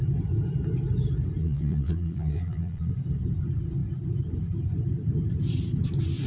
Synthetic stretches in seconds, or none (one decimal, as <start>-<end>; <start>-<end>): 1.4-2.9